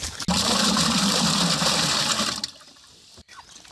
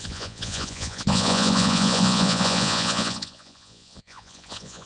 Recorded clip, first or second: first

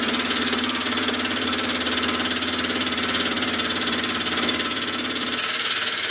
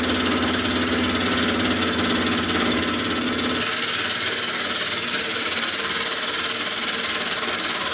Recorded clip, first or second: second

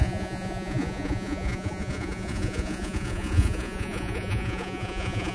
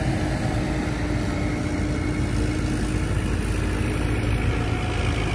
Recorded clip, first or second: second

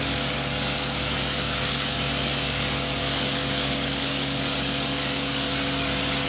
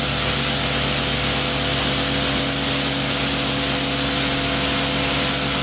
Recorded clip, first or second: second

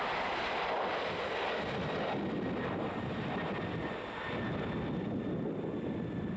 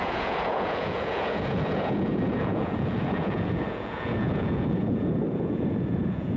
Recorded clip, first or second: first